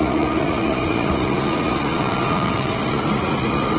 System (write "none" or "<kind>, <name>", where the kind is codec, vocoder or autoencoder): vocoder, Vocos